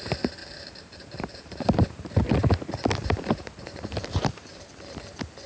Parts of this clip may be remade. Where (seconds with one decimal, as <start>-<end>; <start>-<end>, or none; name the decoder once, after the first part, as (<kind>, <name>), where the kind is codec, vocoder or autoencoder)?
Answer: 0.4-2.1 (vocoder, BigVGAN v2); 3.0-4.6